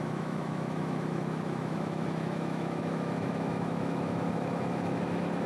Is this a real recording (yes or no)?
no